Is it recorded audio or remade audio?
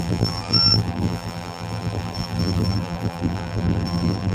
remade